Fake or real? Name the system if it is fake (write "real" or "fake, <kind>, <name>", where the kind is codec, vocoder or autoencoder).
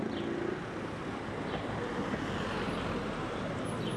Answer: real